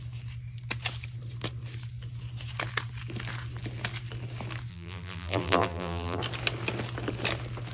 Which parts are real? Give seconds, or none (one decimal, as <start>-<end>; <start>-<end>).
0.0-4.7; 6.2-7.7